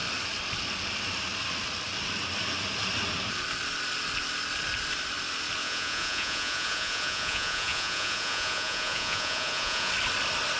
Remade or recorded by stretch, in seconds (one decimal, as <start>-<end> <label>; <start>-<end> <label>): 0.0-5.6 recorded; 5.6-9.9 remade; 9.9-10.6 recorded